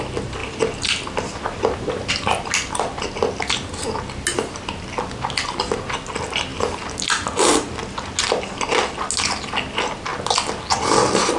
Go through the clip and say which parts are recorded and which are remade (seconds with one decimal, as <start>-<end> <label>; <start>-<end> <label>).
0.0-11.4 recorded